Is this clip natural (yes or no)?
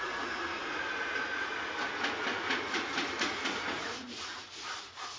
no